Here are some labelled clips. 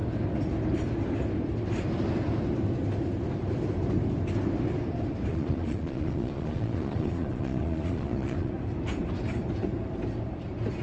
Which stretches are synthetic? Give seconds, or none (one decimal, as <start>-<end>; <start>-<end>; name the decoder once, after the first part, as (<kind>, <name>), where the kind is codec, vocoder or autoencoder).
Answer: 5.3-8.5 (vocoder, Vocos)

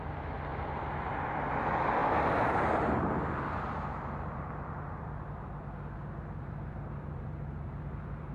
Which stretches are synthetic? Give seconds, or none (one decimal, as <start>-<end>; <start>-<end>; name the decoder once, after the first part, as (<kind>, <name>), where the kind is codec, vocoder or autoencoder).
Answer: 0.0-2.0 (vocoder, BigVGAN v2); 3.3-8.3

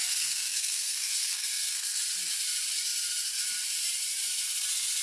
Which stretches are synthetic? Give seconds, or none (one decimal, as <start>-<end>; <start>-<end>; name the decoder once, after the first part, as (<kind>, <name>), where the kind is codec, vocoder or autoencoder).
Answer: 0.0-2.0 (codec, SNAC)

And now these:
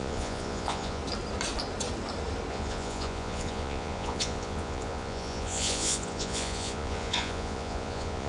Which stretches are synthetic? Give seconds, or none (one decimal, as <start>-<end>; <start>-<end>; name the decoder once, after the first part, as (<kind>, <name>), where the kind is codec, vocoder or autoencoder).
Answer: 0.0-1.0 (vocoder, Vocos); 2.5-8.3